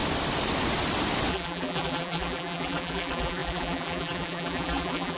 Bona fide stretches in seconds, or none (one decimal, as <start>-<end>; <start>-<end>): 0.0-1.3